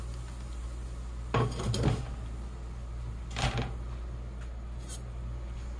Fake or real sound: real